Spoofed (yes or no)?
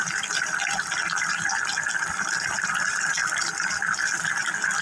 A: no